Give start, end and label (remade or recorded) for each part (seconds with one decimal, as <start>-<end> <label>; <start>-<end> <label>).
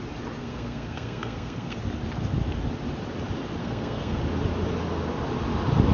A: 0.0-0.4 recorded; 0.4-1.8 remade; 1.8-3.6 recorded; 3.6-4.2 remade; 4.2-5.9 recorded